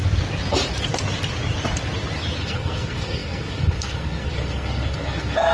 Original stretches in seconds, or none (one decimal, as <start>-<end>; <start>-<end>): 0.0-2.4